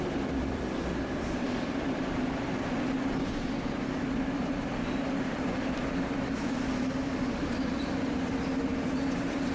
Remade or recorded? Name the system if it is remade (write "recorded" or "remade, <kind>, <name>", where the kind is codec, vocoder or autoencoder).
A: remade, vocoder, BigVGAN v2